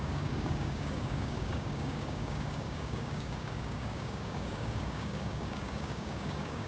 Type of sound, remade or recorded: remade